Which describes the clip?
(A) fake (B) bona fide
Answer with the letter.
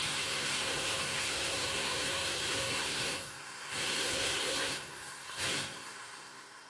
A